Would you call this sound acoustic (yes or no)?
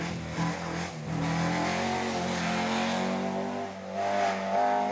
yes